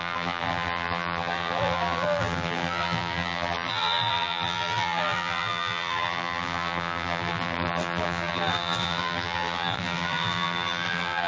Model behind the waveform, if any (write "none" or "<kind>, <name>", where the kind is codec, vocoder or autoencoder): vocoder, BigVGAN v2